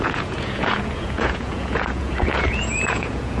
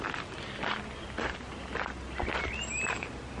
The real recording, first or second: second